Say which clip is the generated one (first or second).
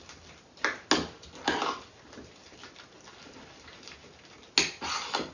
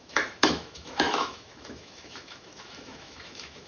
second